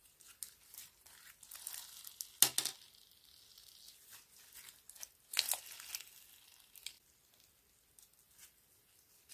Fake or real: real